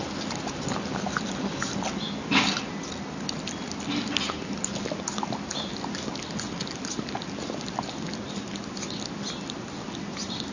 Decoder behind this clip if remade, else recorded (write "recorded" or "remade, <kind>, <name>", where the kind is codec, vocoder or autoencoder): recorded